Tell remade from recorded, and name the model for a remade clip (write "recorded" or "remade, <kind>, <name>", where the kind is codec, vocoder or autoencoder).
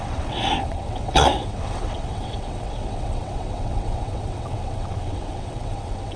remade, vocoder, WaveNeXt